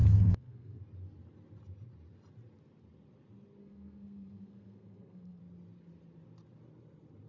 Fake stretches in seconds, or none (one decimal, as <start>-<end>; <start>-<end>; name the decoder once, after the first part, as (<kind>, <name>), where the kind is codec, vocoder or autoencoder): 0.0-0.8 (codec, SNAC); 3.6-5.4